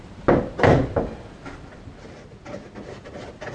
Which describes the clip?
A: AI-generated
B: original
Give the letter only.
B